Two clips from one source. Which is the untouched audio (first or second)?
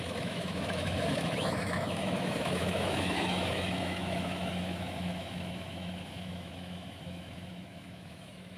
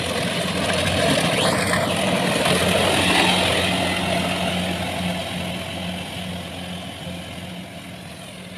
second